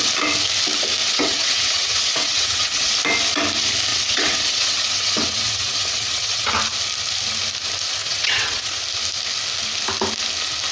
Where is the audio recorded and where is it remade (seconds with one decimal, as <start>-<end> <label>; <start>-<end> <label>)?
0.0-1.0 recorded; 1.0-2.9 remade; 2.9-3.9 recorded; 3.9-6.5 remade; 6.5-8.0 recorded; 8.0-8.8 remade; 8.8-10.7 recorded